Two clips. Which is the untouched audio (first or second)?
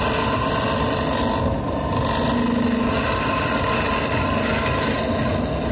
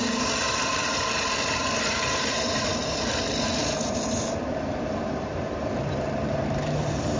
first